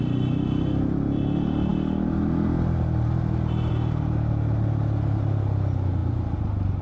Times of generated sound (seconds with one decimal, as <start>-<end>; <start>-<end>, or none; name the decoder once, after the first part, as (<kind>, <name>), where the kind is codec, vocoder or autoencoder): none